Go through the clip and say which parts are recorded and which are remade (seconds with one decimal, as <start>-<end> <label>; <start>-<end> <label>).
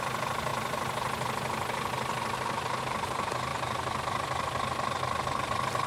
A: 0.0-3.5 recorded; 3.5-4.0 remade; 4.0-5.9 recorded